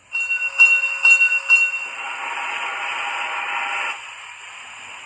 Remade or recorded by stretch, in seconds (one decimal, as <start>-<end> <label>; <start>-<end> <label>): 0.0-5.1 recorded